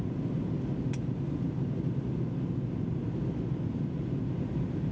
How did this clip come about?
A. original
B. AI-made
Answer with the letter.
A